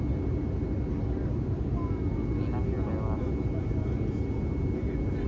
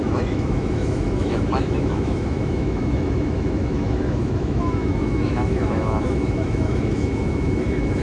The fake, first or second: second